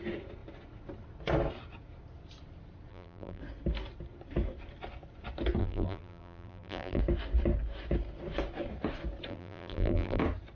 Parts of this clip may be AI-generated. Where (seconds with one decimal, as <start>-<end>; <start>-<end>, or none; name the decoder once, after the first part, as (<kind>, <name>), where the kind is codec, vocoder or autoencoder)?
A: 2.9-3.4 (vocoder, BigVGAN v2); 5.6-7.0; 9.3-10.2